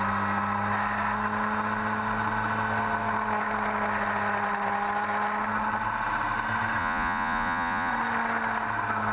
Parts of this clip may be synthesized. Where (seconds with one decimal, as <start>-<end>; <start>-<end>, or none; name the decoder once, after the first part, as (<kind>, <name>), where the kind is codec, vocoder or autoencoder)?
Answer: 6.8-7.9 (vocoder, Vocos)